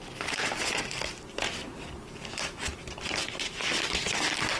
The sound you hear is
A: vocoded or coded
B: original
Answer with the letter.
B